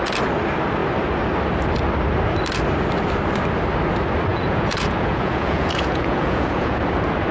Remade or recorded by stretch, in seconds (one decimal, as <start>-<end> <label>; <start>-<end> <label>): 0.0-4.3 recorded; 4.3-6.8 remade; 6.8-7.3 recorded

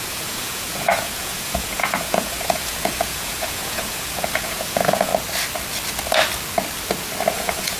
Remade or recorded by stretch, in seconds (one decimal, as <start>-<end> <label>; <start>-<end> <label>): 0.0-5.1 remade; 5.1-7.3 recorded; 7.3-7.8 remade